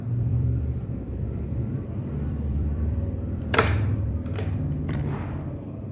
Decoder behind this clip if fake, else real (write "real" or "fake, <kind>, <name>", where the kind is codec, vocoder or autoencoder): fake, vocoder, BigVGAN v2